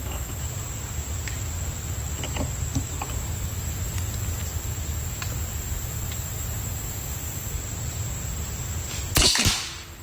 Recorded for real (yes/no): yes